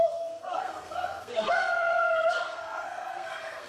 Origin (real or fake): fake